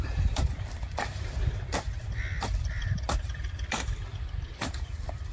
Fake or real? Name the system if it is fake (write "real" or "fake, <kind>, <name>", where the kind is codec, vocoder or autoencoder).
fake, vocoder, BigVGAN v2